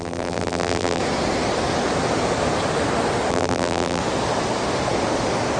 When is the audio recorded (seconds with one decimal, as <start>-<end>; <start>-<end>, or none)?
1.0-3.3; 4.0-5.6